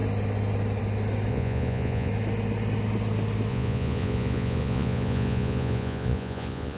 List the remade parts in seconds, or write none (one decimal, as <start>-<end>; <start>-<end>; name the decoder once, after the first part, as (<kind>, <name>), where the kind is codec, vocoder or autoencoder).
1.3-2.1 (vocoder, Vocos); 3.5-6.8